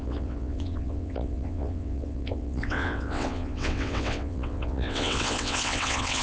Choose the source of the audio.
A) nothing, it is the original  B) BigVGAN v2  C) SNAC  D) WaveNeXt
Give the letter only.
D